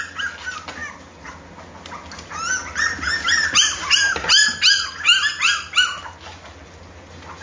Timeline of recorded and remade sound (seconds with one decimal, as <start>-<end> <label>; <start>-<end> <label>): 0.0-7.4 recorded